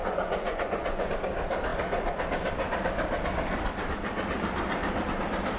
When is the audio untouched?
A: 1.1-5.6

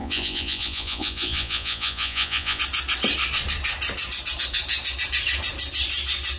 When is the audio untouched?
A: 2.6-6.4

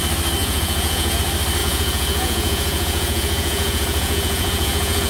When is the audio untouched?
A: 0.0-0.4; 1.2-1.6